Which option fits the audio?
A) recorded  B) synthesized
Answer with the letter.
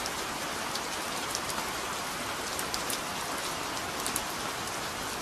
A